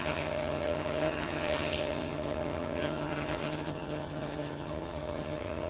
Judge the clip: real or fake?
fake